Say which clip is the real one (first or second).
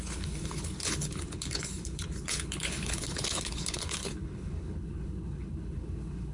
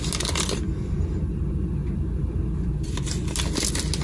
second